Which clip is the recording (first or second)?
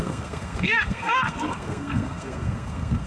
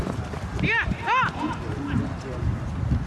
second